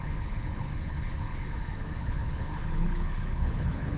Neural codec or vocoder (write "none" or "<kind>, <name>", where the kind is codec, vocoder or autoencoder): codec, HILCodec